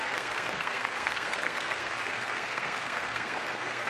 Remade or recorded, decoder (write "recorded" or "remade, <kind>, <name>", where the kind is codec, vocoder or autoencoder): remade, codec, SNAC